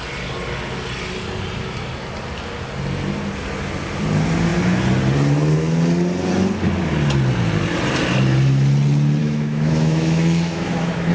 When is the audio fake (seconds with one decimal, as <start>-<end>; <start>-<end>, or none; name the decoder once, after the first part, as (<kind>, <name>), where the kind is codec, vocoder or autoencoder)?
9.2-11.1 (autoencoder, DAC-VAE)